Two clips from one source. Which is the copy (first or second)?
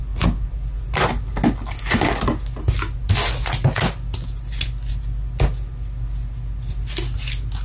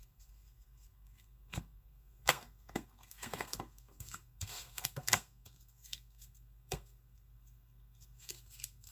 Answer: second